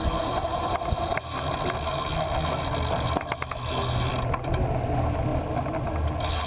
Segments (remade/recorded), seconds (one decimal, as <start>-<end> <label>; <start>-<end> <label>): 0.0-6.5 recorded